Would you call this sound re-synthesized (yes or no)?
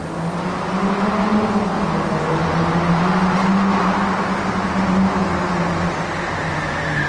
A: no